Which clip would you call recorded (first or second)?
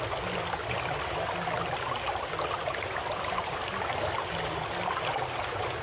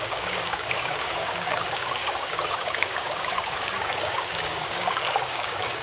first